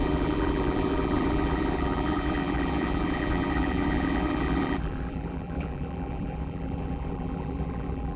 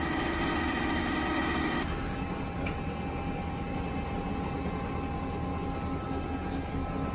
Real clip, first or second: second